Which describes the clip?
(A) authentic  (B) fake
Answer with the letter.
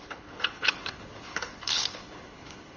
B